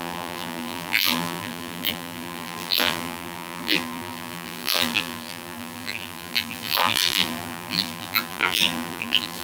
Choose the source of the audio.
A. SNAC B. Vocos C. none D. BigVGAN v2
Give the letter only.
D